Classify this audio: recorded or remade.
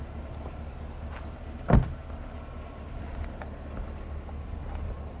recorded